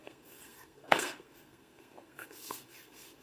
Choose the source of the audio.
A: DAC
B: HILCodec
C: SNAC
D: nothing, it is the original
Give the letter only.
C